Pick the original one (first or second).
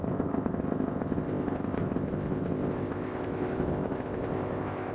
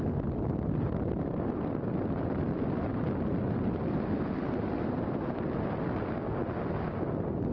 second